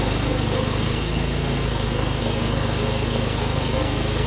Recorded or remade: remade